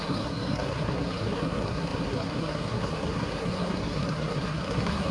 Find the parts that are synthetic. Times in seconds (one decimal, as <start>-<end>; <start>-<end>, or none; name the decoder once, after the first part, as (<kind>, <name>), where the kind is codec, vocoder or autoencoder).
0.0-5.1 (codec, SNAC)